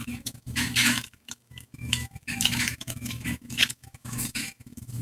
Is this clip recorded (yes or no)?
no